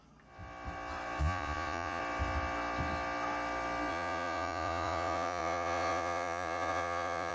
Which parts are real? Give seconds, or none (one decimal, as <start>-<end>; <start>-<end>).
0.0-1.2; 2.0-3.9